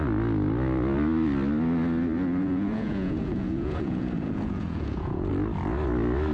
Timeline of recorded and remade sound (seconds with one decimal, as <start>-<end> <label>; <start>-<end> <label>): 0.0-2.4 recorded; 2.4-5.3 remade; 5.3-6.3 recorded